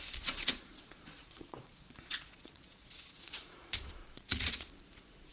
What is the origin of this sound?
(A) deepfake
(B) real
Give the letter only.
A